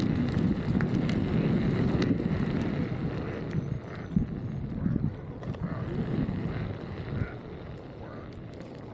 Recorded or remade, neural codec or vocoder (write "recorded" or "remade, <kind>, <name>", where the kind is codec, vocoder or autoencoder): recorded